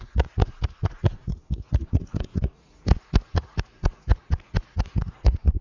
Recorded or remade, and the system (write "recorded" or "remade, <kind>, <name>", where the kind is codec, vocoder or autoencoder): remade, vocoder, Vocos